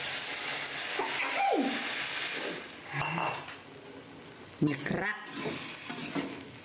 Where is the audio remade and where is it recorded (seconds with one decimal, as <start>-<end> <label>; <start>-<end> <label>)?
0.0-6.6 recorded